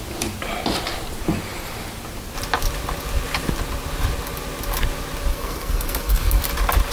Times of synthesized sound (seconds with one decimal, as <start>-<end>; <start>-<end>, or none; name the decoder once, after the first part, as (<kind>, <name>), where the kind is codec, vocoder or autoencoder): 5.3-6.4 (codec, SNAC)

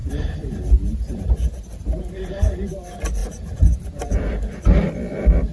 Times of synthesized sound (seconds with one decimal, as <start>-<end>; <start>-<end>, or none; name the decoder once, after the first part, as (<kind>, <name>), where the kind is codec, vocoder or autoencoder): 0.0-1.5 (vocoder, BigVGAN v2); 3.2-4.6

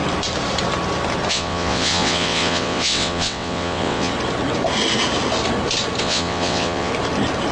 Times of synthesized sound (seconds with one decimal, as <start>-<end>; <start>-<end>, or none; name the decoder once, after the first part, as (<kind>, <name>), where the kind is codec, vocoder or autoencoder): 1.3-4.1 (vocoder, WaveNeXt); 6.0-6.9

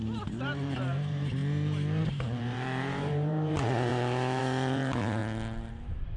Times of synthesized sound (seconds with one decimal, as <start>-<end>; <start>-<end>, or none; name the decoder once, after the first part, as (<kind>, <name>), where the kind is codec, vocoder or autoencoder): 0.0-1.4 (vocoder, BigVGAN v2); 2.0-5.2; 5.7-6.2

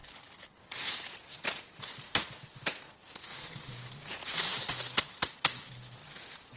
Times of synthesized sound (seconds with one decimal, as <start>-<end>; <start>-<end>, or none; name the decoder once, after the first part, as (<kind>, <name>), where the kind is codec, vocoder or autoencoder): 0.0-0.6 (codec, HILCodec)